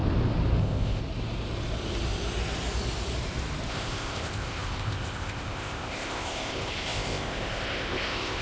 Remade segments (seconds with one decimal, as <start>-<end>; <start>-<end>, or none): 0.6-1.0; 3.7-8.4